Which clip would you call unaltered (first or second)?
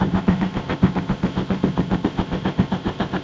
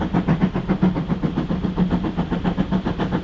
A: second